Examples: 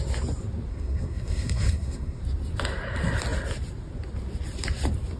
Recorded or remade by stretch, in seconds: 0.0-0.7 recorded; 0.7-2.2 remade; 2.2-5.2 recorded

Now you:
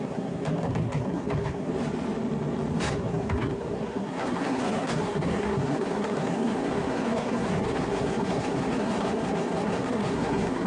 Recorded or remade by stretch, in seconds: 0.0-1.7 remade; 1.7-2.8 recorded; 2.8-10.7 remade

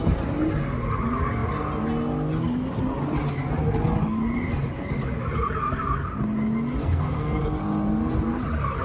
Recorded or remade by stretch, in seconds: 0.0-6.8 recorded; 6.8-7.4 remade; 7.4-8.8 recorded